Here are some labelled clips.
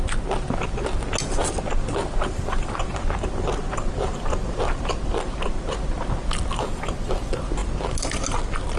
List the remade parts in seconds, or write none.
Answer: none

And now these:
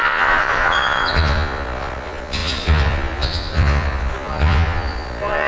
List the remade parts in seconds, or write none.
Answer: 0.0-5.5 (vocoder, Vocos)